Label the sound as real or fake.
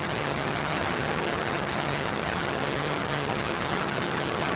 fake